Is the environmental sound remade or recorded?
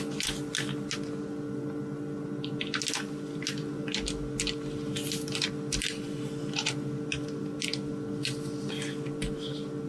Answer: recorded